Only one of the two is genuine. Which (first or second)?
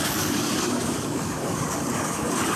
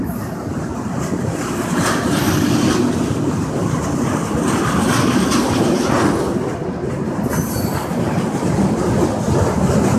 second